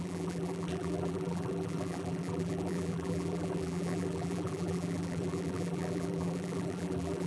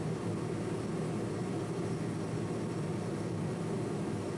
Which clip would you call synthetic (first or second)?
first